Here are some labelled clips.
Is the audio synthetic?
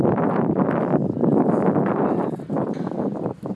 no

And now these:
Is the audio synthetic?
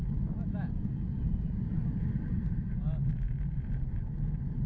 no